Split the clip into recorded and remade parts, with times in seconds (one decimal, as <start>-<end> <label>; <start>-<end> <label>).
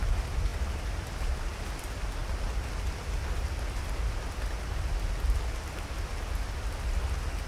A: 0.0-7.5 recorded